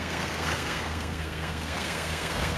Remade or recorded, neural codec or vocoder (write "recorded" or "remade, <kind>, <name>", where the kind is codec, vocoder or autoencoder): remade, codec, SNAC